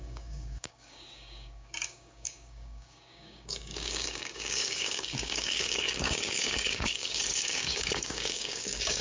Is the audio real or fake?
fake